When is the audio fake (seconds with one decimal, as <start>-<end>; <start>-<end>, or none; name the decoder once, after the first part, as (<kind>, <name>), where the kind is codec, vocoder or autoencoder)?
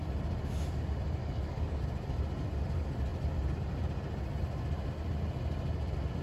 1.2-1.8 (codec, DAC)